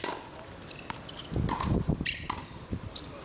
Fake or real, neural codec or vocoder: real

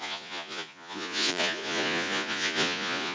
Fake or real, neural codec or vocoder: fake, vocoder, Vocos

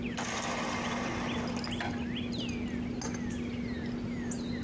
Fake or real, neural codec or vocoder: real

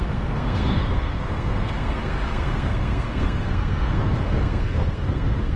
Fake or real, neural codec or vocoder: fake, codec, SNAC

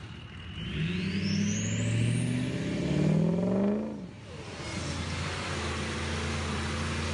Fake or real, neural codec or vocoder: real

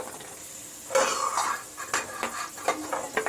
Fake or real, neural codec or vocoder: real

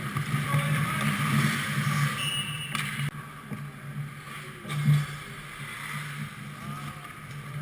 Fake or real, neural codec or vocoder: real